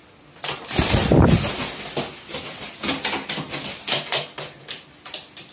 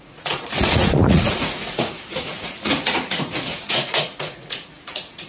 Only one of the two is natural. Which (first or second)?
first